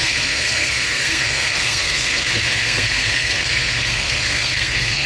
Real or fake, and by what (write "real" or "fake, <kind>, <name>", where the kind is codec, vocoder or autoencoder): fake, codec, SNAC